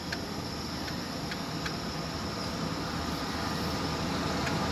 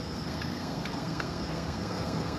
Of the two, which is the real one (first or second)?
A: first